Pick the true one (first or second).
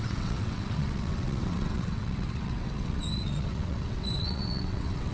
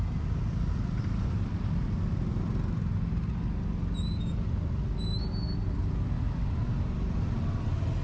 second